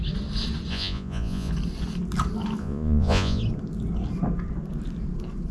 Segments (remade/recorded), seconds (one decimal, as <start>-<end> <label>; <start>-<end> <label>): 0.0-0.7 recorded; 0.7-1.5 remade; 1.5-2.6 recorded; 2.6-3.4 remade; 3.4-5.5 recorded